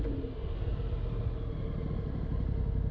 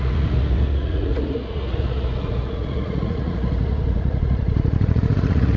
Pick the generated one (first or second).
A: second